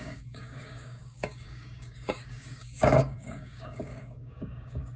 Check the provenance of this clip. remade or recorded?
remade